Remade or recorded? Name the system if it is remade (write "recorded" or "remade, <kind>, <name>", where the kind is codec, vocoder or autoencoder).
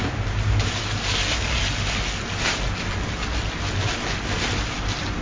recorded